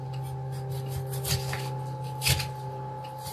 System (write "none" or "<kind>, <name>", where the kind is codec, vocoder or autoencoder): none